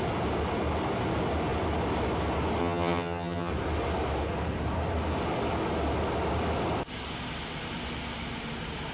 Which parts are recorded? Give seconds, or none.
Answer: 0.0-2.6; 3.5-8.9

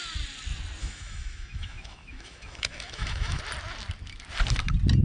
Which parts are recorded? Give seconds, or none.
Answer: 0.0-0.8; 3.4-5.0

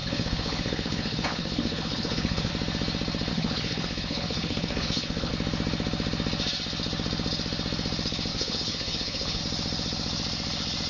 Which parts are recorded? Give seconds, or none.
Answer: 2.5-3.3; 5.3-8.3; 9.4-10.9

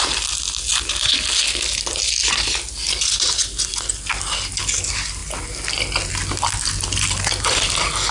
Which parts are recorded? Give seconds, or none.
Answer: 0.0-8.1

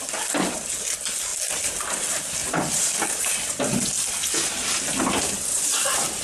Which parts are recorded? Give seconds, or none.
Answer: 0.0-6.2